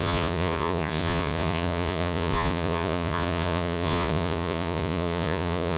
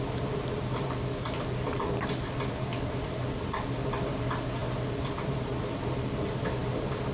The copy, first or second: first